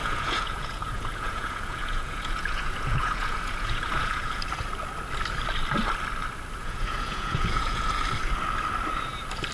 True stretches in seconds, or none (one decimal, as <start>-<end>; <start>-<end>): 4.4-6.6; 7.9-9.5